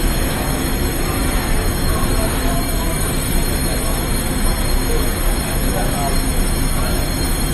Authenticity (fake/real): real